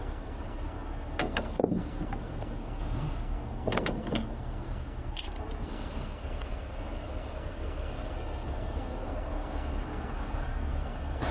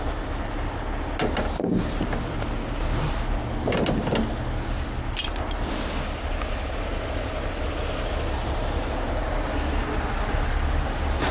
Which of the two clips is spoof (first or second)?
first